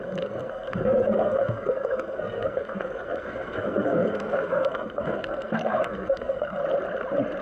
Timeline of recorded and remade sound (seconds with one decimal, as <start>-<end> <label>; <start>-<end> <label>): 0.0-6.6 remade; 6.6-7.4 recorded